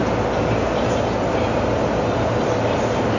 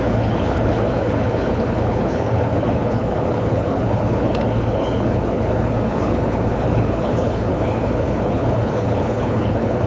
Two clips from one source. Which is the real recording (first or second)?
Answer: first